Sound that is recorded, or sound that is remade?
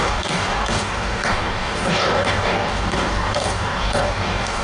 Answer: remade